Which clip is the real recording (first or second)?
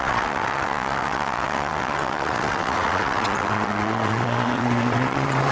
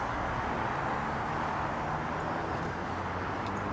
second